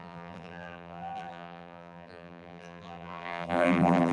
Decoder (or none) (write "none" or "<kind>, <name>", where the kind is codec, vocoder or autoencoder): vocoder, BigVGAN v2